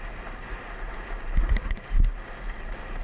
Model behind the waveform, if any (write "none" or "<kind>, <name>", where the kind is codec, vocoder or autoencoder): none